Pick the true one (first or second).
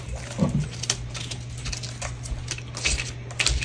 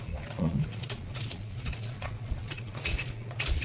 first